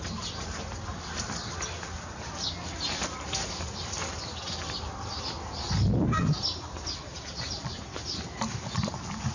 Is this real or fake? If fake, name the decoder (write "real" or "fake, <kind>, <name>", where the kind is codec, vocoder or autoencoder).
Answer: real